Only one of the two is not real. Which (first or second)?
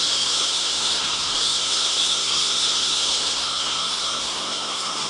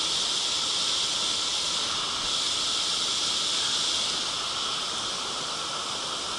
first